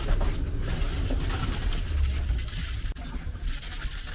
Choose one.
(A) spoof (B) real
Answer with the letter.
B